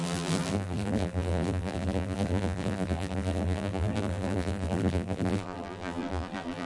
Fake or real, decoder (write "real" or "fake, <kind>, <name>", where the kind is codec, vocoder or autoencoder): fake, vocoder, BigVGAN v2